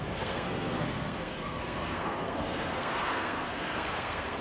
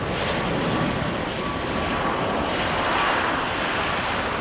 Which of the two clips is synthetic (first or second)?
first